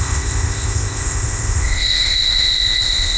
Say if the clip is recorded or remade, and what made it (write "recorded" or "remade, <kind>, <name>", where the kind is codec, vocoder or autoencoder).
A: remade, codec, ZipCodec